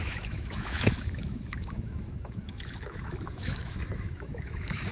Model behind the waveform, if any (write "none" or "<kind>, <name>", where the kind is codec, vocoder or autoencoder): autoencoder, DAC-VAE